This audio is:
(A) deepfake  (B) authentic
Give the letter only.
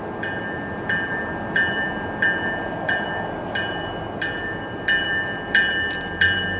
B